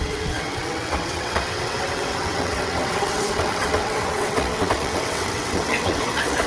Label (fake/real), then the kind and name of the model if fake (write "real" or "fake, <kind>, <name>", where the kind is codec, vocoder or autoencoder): fake, vocoder, WaveNeXt